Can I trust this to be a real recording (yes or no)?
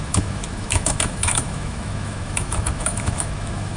no